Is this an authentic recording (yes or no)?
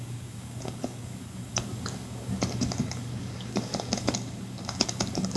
no